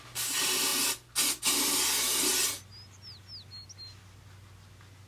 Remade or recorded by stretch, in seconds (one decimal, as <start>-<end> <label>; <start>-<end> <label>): 0.0-5.1 recorded